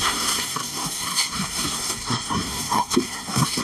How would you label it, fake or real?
fake